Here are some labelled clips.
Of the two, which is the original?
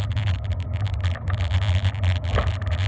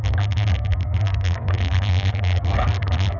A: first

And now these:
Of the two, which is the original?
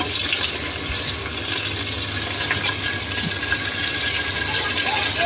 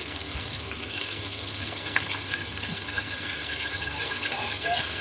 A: first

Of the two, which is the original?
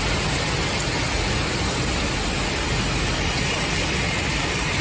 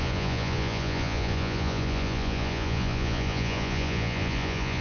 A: first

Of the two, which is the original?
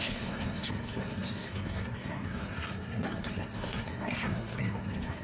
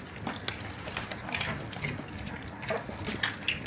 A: second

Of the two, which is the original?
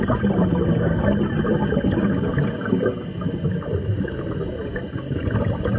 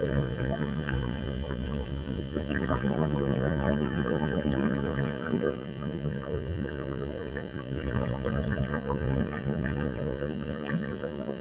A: first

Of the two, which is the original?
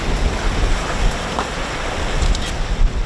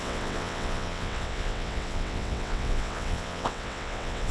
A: first